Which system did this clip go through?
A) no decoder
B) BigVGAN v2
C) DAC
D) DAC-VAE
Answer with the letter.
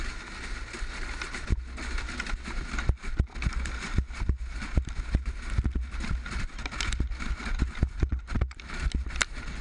A